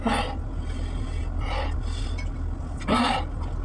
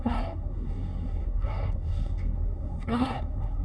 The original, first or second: first